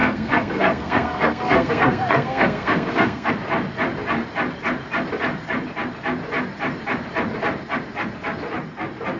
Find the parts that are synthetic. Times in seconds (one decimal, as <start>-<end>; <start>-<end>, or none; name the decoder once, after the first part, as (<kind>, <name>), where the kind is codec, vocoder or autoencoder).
0.0-3.3 (codec, SNAC)